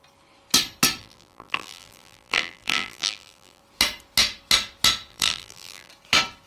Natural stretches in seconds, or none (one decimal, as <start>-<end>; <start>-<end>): 0.0-1.0; 3.6-5.1; 5.9-6.5